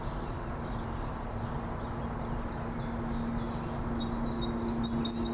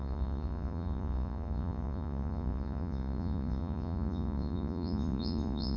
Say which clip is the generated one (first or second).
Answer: second